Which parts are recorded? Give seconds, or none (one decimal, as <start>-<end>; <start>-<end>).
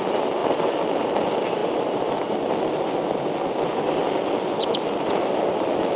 0.0-6.0